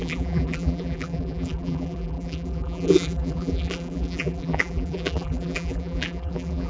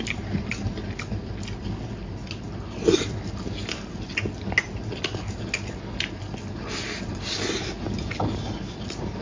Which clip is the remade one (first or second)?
first